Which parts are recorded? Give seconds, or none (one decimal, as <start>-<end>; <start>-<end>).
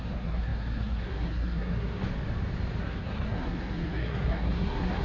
2.0-2.8